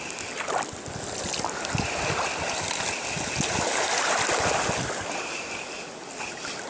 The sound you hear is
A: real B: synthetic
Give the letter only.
A